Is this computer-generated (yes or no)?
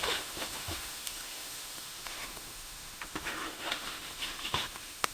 yes